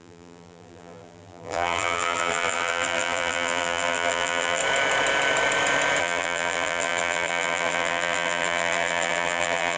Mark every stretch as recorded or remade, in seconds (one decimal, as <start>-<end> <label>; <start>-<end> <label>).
0.0-4.6 remade; 4.6-6.0 recorded; 6.0-9.8 remade